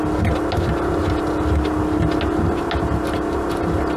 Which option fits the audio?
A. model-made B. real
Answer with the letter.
B